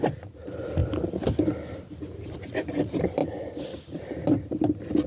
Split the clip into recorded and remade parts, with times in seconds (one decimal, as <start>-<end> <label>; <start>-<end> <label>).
0.0-0.8 remade; 0.8-2.0 recorded; 2.0-3.2 remade; 3.2-5.1 recorded